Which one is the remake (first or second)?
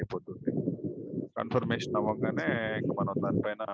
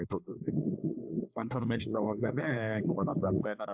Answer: second